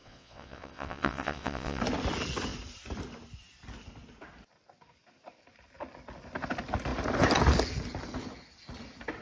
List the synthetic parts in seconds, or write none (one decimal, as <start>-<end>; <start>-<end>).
0.0-1.8

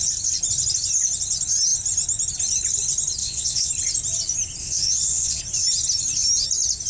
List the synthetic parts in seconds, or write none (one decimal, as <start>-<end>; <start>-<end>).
3.2-3.7; 4.6-5.4

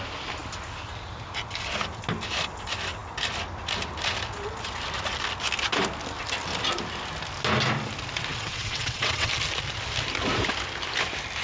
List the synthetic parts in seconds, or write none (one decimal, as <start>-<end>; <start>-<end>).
8.3-9.3

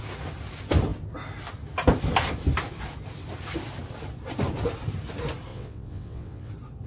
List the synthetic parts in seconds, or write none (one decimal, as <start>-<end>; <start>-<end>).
5.5-6.5

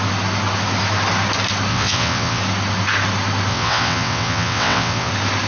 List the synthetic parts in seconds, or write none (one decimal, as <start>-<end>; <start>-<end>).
1.7-2.4; 3.5-5.1

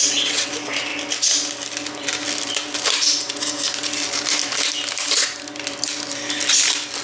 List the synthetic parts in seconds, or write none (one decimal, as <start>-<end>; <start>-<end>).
0.0-0.5

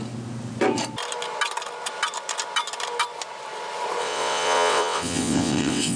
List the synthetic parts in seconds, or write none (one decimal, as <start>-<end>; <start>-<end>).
4.0-6.0

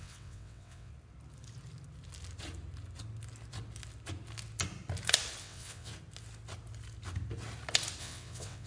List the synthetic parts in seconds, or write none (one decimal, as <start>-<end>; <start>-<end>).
0.0-0.9; 5.4-5.9; 8.0-8.7